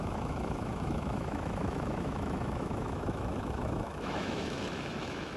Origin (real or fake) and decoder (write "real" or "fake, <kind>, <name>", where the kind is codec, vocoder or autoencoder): fake, autoencoder, DAC-VAE